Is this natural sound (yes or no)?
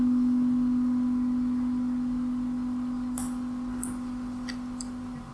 yes